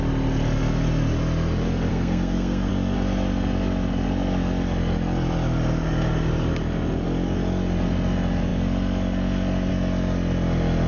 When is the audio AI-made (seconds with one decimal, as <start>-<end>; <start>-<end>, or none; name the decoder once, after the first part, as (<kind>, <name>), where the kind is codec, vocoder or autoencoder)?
1.9-2.7 (codec, SNAC)